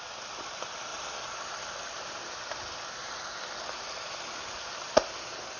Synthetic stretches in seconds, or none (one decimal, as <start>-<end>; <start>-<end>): 0.9-2.6